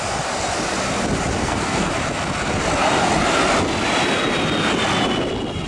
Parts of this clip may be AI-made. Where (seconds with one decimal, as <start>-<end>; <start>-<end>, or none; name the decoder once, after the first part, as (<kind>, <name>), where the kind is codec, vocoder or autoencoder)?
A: 1.4-1.9 (codec, SNAC)

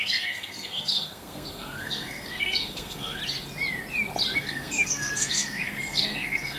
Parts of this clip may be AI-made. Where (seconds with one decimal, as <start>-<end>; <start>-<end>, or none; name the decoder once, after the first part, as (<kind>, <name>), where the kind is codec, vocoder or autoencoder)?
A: 0.0-3.2 (codec, SNAC); 4.4-6.6

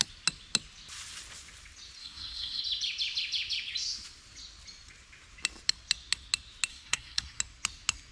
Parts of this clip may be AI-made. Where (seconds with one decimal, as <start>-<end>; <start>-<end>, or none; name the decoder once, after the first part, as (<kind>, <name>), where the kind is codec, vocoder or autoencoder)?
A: 2.0-2.6 (codec, SNAC); 6.7-7.4

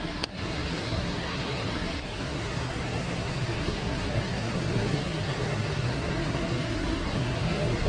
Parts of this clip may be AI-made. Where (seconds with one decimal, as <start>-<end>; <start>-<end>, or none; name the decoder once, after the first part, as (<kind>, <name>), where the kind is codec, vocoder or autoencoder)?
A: 0.0-7.9 (codec, SNAC)

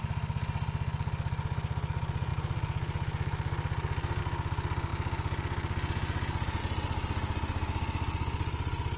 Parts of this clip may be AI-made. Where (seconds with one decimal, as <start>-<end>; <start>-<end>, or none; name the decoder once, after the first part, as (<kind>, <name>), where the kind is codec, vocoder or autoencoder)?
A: none